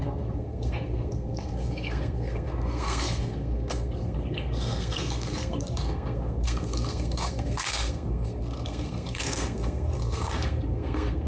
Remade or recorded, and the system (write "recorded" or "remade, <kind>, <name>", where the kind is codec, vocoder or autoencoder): remade, codec, SNAC